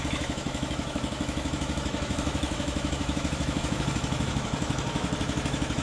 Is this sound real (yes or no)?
no